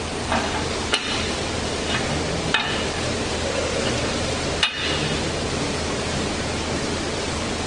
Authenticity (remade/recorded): recorded